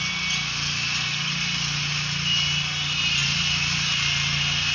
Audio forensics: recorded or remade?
recorded